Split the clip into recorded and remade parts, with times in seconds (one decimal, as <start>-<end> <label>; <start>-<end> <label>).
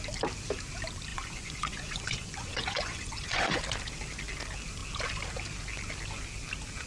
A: 0.0-1.1 recorded; 1.1-3.6 remade; 3.6-6.9 recorded